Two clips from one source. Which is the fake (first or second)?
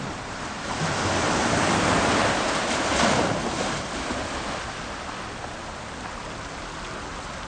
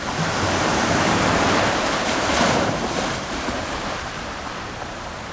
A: second